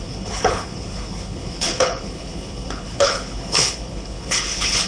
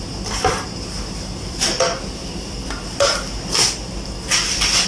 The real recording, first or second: second